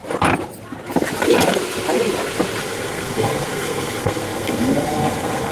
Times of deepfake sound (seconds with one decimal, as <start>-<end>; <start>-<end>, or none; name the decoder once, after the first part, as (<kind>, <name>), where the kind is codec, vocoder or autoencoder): 2.6-5.5 (codec, SNAC)

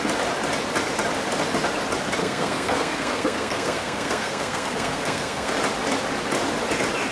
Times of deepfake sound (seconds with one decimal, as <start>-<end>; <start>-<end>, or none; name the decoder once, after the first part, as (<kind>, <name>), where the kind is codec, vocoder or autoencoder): 2.2-5.5 (codec, SNAC)

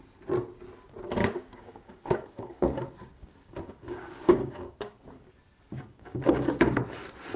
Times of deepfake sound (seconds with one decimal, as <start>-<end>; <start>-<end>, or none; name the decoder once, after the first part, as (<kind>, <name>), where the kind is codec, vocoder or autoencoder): 1.2-5.3 (codec, DAC); 5.7-6.8

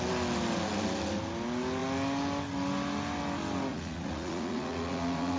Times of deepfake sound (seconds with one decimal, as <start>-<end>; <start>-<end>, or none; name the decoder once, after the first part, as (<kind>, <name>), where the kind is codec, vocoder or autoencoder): 3.7-5.4 (vocoder, Vocos)

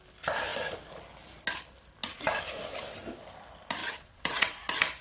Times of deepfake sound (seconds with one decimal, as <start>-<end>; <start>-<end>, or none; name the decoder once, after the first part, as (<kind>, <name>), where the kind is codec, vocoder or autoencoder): 3.8-4.6 (vocoder, WaveNeXt)

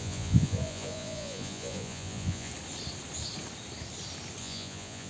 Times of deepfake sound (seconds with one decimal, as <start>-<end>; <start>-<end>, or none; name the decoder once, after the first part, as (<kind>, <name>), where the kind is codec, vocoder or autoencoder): 0.0-2.5 (vocoder, Vocos); 4.4-5.1

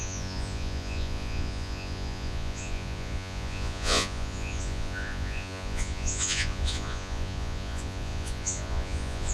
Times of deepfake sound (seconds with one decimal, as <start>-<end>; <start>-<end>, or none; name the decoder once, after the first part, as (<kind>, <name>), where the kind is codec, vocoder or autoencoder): 0.0-9.3 (vocoder, Vocos)